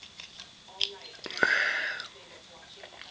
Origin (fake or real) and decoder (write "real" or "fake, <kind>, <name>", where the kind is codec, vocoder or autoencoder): real